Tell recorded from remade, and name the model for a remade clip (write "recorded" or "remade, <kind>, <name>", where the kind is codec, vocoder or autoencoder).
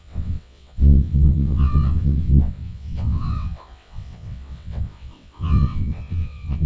remade, vocoder, WaveNeXt